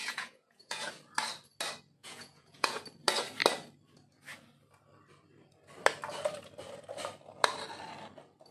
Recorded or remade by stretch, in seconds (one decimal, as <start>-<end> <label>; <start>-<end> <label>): 0.0-0.9 remade; 0.9-2.0 recorded; 2.0-2.8 remade; 2.8-8.5 recorded